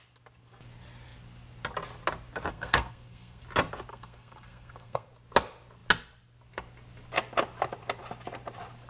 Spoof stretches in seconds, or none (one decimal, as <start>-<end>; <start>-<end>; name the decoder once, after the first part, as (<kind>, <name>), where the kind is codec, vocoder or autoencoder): 2.5-3.4 (codec, SNAC); 3.9-5.1